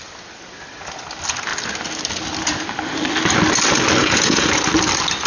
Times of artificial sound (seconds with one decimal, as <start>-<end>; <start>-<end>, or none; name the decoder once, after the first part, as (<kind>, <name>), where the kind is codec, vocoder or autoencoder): 4.0-4.5 (vocoder, Vocos)

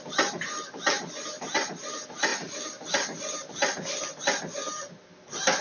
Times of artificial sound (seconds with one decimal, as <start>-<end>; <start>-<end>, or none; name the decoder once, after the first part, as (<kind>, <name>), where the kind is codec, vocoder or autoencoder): 2.3-4.2 (vocoder, BigVGAN v2)

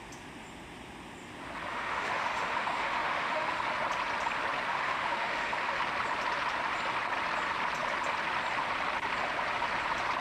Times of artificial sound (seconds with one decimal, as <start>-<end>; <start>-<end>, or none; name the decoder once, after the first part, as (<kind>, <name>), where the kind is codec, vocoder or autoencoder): 1.7-3.6 (autoencoder, DAC-VAE); 4.7-5.8

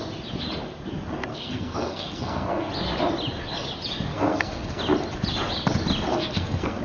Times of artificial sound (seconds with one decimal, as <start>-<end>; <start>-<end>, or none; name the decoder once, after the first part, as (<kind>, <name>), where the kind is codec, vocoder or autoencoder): 1.3-2.7 (codec, SNAC); 4.1-4.8; 6.1-6.8